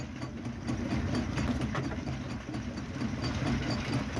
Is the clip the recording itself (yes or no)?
yes